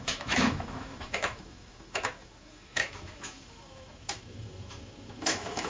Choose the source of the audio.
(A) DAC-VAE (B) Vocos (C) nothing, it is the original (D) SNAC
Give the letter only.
A